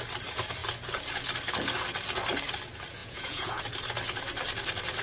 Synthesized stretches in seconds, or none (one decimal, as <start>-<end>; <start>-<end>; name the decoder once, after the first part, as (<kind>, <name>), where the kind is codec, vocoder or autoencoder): 3.0-3.6 (vocoder, Vocos)